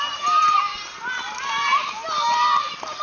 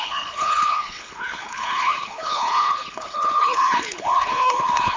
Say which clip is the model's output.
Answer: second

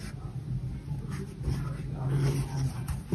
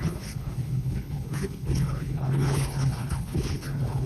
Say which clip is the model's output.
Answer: second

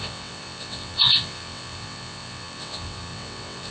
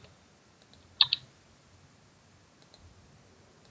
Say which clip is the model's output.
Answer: first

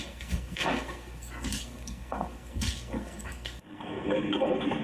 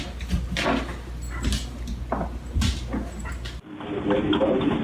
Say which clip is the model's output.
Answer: first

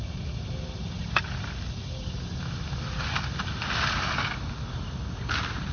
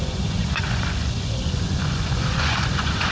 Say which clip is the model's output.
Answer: second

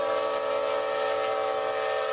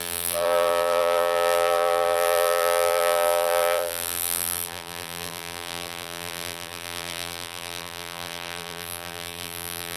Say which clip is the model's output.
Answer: second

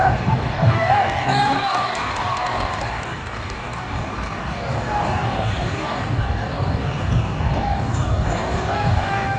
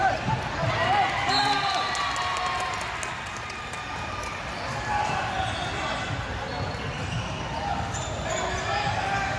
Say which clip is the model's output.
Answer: first